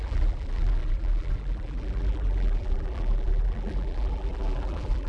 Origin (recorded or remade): remade